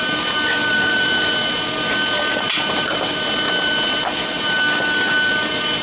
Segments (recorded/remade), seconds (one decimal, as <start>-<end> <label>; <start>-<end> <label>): 0.0-0.6 recorded; 0.6-1.3 remade; 1.3-2.5 recorded; 2.5-3.0 remade; 3.0-5.8 recorded